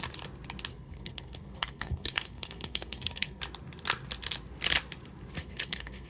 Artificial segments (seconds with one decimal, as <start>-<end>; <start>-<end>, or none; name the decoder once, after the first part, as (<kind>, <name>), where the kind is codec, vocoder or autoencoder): 0.7-3.4 (codec, SNAC); 5.4-6.1